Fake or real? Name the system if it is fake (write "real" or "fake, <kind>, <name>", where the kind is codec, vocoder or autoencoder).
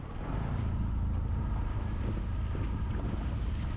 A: real